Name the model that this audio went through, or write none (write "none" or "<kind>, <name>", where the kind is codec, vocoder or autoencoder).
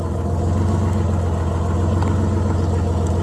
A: none